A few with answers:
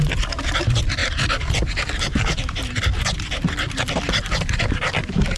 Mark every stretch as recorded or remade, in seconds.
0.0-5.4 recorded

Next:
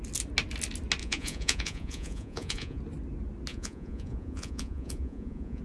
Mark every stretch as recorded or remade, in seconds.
0.0-1.0 recorded; 1.0-2.8 remade; 2.8-3.5 recorded; 3.5-5.6 remade

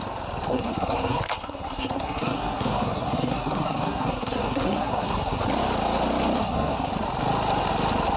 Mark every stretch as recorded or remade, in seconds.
0.0-0.5 recorded; 0.5-5.4 remade; 5.4-6.4 recorded; 6.4-6.9 remade; 6.9-8.2 recorded

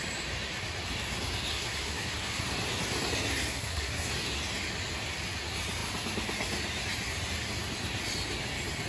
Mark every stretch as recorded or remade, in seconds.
0.0-1.5 recorded; 1.5-2.4 remade; 2.4-3.5 recorded; 3.5-4.1 remade; 4.1-8.9 recorded